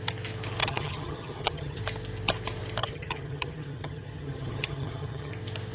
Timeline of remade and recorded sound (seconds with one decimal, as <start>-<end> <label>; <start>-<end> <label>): 0.0-0.6 recorded; 0.6-1.8 remade; 1.8-2.8 recorded; 2.8-5.3 remade; 5.3-5.7 recorded